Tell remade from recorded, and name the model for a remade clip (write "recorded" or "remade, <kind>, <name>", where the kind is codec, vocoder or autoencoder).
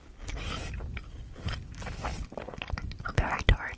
recorded